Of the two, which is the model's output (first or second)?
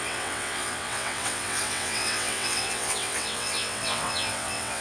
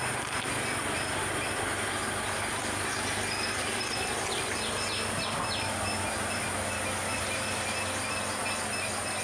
first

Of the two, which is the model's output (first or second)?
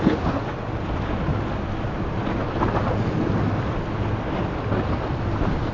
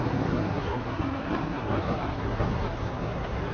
second